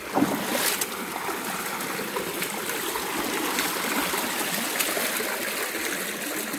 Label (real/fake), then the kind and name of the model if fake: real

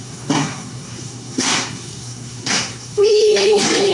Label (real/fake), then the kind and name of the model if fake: fake, codec, SNAC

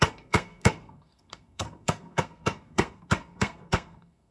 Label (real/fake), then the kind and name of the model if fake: fake, codec, SNAC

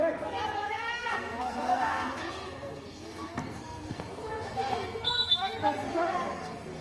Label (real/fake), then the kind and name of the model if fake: fake, codec, SNAC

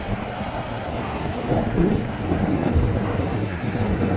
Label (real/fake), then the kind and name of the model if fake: fake, codec, SNAC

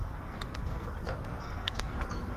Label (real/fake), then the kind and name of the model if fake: fake, codec, SNAC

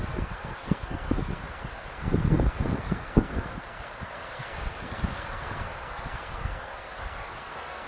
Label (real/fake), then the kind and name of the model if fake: fake, codec, SNAC